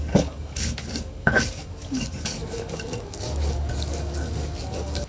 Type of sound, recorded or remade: remade